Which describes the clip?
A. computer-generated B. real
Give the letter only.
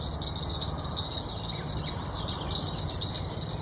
B